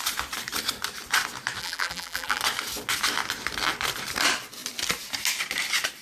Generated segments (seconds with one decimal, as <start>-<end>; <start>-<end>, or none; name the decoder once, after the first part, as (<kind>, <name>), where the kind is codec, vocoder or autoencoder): 1.6-2.4 (vocoder, BigVGAN v2)

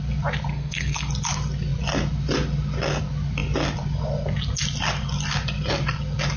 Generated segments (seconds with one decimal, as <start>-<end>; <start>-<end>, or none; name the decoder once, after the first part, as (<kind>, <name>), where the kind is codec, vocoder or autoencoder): 0.5-1.1 (codec, SNAC)